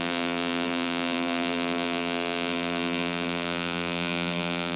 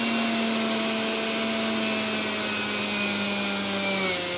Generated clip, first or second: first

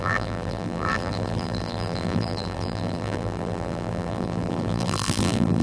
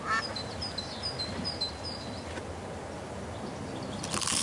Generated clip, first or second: first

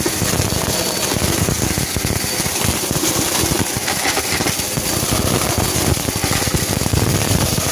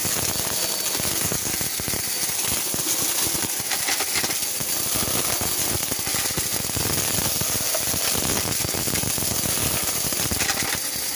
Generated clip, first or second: first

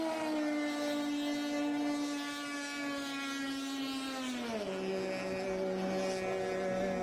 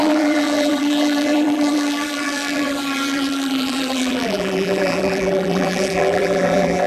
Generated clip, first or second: second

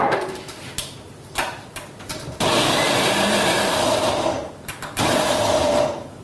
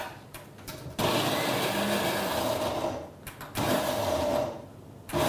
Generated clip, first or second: first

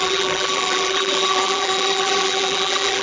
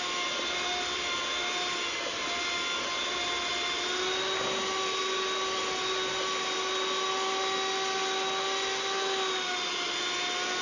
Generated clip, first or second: first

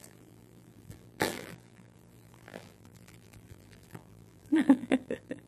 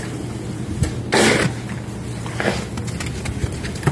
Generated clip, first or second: first